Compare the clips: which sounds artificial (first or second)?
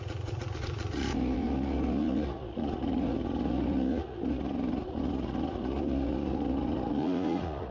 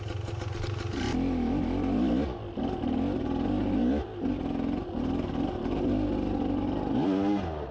first